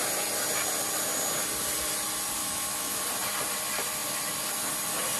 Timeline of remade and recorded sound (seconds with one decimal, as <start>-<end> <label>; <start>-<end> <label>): 0.0-2.4 recorded; 2.4-3.0 remade; 3.0-5.2 recorded